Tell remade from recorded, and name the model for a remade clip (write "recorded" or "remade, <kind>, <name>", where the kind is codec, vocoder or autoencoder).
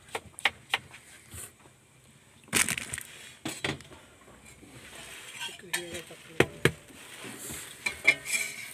recorded